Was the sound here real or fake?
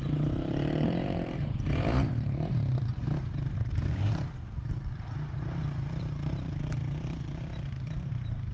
fake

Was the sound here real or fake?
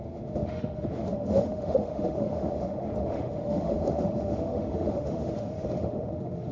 fake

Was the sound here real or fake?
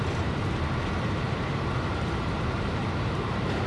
fake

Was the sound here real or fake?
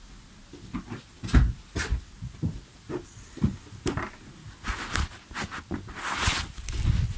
real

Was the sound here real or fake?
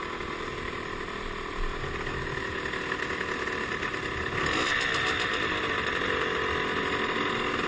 real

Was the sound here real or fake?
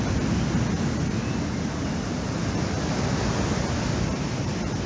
real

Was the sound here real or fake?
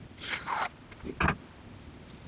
real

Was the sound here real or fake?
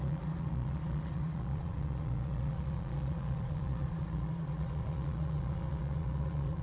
fake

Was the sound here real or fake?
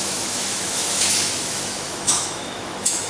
fake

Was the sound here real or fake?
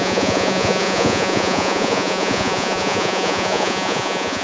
fake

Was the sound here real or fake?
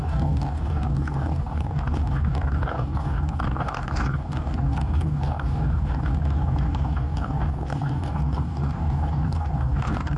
fake